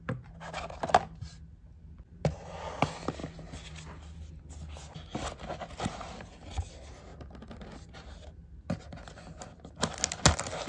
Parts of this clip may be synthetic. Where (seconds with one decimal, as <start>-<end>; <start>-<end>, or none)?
none